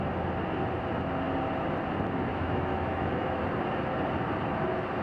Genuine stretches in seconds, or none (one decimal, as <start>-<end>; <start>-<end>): 0.0-2.3; 3.4-5.0